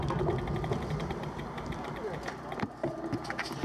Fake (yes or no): no